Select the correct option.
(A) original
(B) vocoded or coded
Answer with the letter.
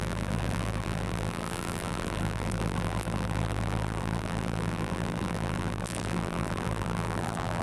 B